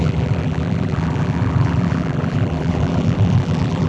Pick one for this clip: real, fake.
fake